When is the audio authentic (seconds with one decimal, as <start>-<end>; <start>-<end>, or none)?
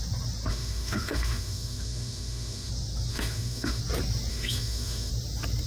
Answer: 0.0-0.5; 2.7-3.1; 3.8-4.3; 5.1-5.7